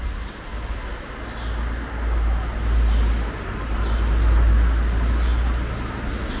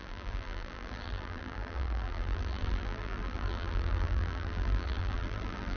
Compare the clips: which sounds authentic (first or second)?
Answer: first